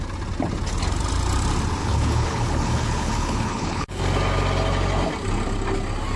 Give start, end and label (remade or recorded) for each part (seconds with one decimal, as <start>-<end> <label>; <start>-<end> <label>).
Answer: 0.0-1.8 recorded; 1.8-4.0 remade; 4.0-6.2 recorded